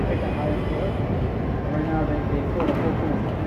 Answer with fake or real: real